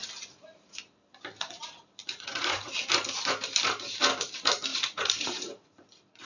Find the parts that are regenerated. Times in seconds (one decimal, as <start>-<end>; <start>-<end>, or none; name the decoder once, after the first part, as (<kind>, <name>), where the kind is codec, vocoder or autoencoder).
2.0-2.7 (vocoder, Vocos); 4.7-6.2